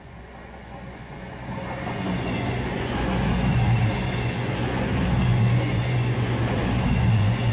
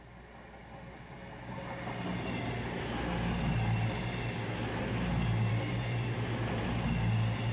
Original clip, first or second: second